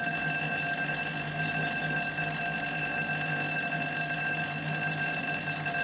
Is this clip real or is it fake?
real